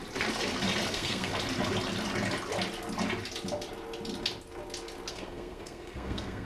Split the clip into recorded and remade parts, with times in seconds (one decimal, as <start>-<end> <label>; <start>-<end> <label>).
0.0-0.9 recorded; 0.9-1.3 remade; 1.3-5.1 recorded; 5.1-6.4 remade